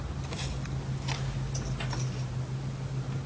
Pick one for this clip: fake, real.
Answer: real